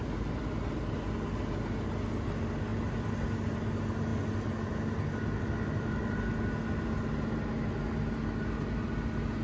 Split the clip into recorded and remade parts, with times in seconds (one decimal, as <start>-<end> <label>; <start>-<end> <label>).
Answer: 0.0-9.4 recorded